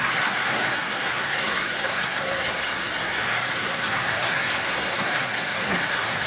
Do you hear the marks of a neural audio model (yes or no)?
yes